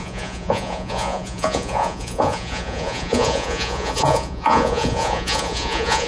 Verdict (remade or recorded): remade